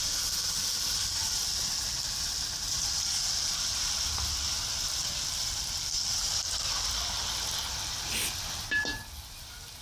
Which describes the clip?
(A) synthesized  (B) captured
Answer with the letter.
B